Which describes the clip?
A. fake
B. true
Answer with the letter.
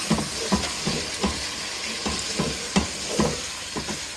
B